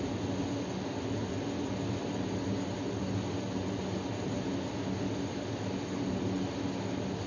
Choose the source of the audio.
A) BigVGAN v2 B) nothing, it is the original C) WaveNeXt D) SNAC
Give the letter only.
B